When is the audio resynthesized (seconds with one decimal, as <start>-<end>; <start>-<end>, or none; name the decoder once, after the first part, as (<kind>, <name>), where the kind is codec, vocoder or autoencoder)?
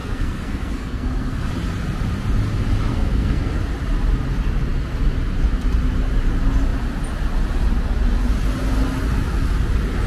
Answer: 0.0-1.5 (codec, SNAC); 2.9-3.6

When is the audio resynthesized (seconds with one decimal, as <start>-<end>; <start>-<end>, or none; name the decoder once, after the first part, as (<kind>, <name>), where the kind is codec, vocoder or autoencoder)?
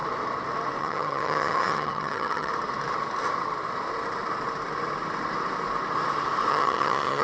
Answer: 0.8-2.5 (vocoder, HiFi-GAN); 6.5-7.2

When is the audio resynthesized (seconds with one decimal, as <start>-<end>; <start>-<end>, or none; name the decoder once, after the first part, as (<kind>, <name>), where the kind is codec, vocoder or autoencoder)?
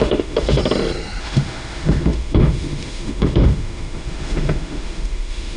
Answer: 0.0-0.6 (autoencoder, DAC-VAE); 1.2-5.6